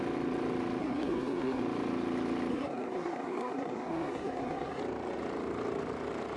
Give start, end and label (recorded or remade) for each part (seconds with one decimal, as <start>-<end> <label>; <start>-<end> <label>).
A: 0.0-0.8 recorded; 0.8-1.6 remade; 1.6-2.5 recorded; 2.5-4.8 remade; 4.8-6.4 recorded